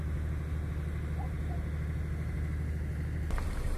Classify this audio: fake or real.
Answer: real